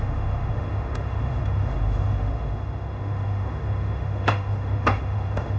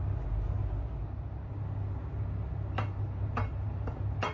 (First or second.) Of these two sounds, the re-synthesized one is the first